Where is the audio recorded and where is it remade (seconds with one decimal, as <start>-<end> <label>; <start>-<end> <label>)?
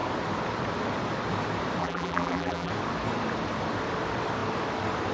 0.0-1.8 recorded; 1.8-2.7 remade; 2.7-5.1 recorded